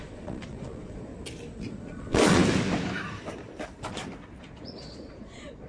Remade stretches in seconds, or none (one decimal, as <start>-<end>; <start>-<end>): 0.0-1.1; 1.6-2.4; 4.4-5.7